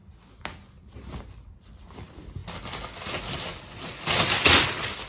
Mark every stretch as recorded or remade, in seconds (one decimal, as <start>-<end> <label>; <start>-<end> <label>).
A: 0.0-5.1 recorded